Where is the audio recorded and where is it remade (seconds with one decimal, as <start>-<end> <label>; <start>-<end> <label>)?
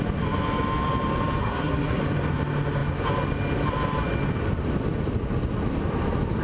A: 0.0-1.4 recorded; 1.4-2.0 remade; 2.0-6.4 recorded